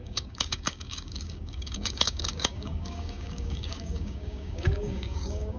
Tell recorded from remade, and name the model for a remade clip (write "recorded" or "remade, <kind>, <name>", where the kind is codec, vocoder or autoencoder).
remade, codec, DAC